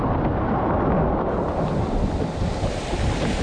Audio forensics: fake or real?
real